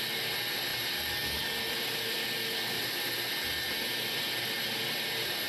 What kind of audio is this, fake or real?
real